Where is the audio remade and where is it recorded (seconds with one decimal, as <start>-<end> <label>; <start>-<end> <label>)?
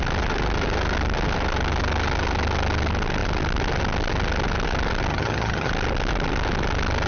0.0-5.1 recorded; 5.1-5.7 remade; 5.7-7.1 recorded